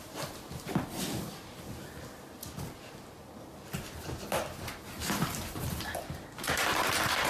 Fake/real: real